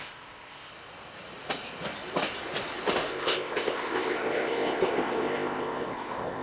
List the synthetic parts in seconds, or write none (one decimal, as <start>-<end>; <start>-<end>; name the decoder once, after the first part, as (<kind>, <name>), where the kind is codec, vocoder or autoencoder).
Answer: 0.0-0.7 (codec, ZipCodec); 3.1-6.4